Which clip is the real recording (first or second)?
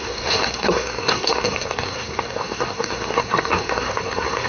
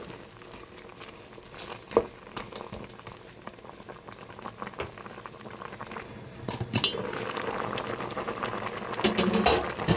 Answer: second